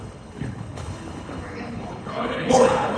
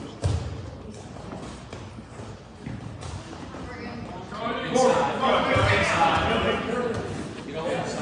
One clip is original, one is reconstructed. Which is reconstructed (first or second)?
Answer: first